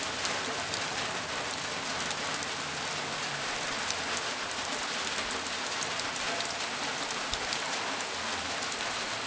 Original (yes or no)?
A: yes